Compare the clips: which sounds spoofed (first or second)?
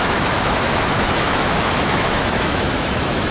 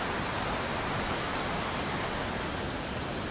first